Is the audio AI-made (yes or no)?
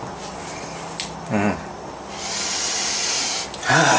no